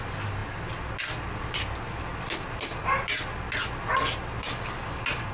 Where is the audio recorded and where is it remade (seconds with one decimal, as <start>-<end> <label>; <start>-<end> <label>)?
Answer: 0.0-5.3 recorded